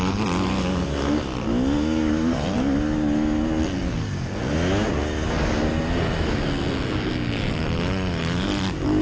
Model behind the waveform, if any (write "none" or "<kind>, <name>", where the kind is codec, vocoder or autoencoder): none